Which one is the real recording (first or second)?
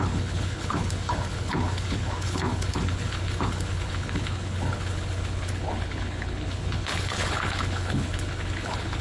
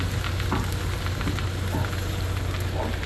second